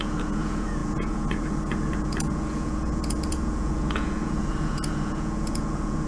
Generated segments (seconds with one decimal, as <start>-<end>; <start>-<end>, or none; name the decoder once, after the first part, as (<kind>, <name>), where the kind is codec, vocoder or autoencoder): 0.0-6.1 (vocoder, Vocos)